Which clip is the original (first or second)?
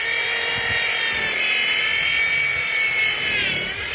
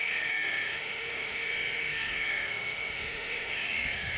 first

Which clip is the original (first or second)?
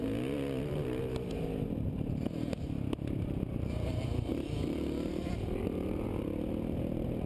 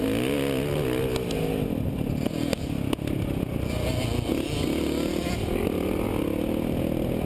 second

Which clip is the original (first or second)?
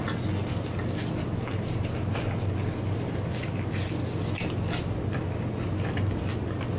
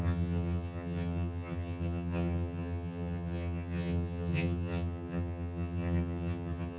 first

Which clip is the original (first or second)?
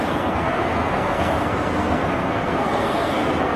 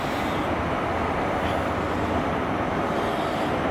second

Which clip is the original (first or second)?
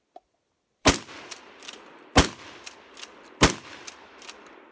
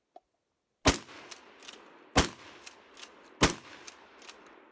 second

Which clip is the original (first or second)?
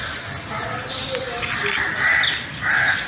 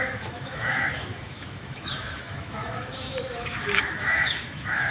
first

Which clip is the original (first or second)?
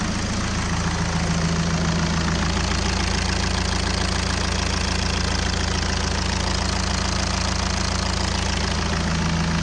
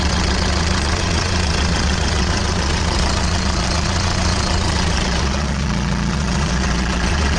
first